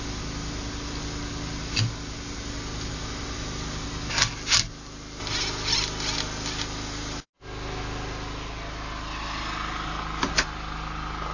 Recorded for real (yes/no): yes